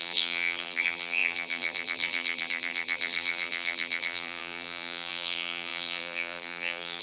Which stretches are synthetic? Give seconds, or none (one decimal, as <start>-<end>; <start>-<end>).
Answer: 0.0-7.0